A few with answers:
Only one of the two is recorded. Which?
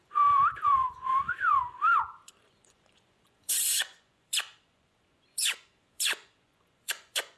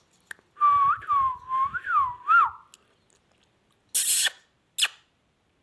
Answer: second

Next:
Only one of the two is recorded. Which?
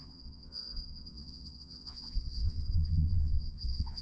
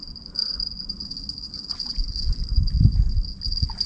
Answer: second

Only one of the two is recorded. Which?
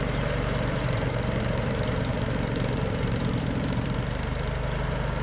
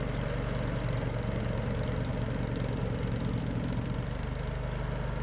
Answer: second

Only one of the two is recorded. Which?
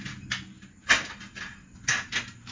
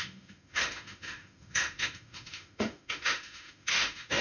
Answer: first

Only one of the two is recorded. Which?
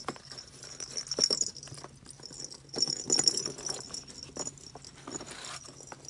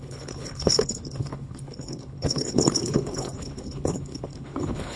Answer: first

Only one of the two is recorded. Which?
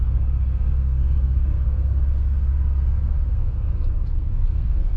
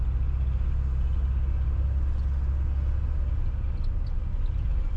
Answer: second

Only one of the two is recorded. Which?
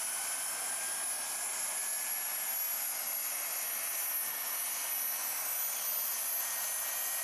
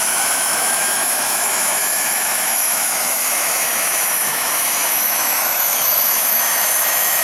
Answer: first